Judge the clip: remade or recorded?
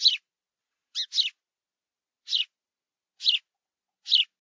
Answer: recorded